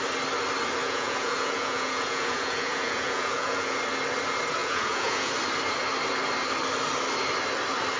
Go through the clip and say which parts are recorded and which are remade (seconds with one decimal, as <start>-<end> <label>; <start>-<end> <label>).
0.0-0.8 recorded; 0.8-3.8 remade; 3.8-4.6 recorded; 4.6-5.3 remade; 5.3-8.0 recorded